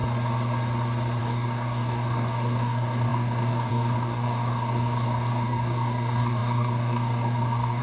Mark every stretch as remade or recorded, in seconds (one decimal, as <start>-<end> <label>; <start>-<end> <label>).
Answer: 0.0-1.2 recorded; 1.2-7.8 remade